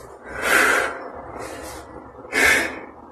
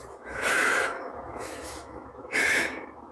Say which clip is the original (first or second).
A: first